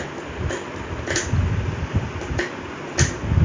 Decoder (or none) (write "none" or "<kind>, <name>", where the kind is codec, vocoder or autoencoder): none